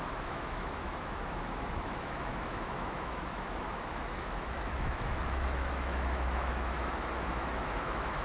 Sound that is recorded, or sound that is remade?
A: remade